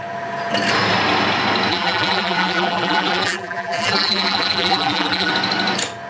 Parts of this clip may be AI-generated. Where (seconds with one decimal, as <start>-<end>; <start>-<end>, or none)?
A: 1.7-5.3